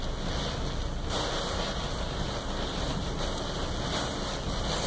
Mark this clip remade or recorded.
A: recorded